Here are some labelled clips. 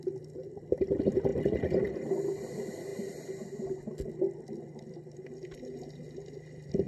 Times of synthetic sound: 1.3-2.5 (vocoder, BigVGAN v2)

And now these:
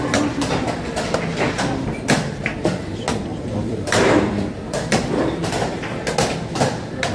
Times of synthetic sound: 3.3-5.2 (vocoder, BigVGAN v2)